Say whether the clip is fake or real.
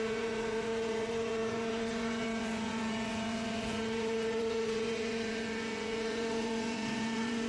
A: fake